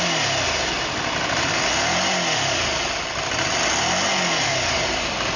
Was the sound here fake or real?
real